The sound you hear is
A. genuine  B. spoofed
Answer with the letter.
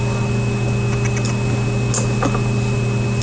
A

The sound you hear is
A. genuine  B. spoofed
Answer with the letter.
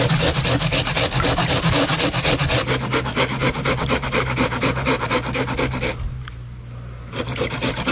A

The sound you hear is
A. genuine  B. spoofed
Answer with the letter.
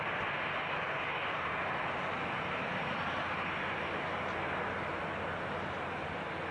A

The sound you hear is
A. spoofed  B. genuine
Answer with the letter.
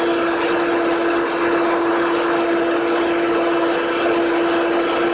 B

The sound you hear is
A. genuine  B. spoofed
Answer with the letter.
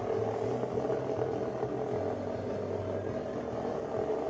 A